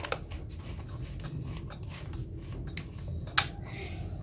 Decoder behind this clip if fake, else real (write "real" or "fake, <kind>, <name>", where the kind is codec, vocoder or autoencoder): real